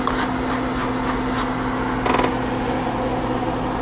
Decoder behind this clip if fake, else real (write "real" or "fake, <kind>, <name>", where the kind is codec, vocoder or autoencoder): real